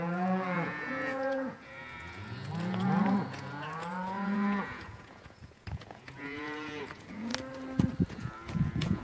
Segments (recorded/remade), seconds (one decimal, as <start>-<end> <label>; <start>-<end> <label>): 0.0-7.3 remade; 7.3-8.0 recorded; 8.0-9.0 remade